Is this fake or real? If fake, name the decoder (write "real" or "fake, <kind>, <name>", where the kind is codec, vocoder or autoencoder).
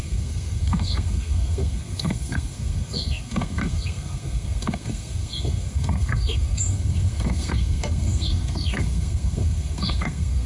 fake, codec, SNAC